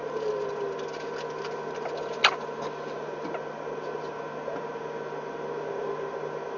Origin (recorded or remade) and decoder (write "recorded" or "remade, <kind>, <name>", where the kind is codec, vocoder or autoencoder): recorded